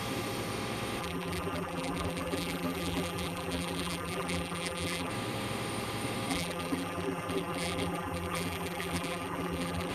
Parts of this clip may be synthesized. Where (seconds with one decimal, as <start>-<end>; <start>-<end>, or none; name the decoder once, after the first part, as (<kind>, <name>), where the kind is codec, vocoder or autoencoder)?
1.0-5.1 (vocoder, BigVGAN v2); 6.3-9.9